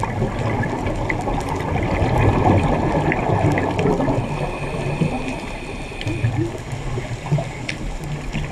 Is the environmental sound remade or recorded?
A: recorded